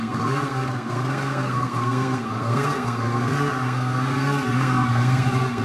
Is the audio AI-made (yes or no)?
yes